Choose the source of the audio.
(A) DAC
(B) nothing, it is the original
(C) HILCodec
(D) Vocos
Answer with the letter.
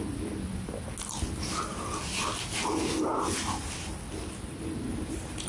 B